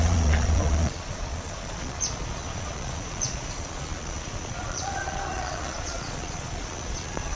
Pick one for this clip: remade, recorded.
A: remade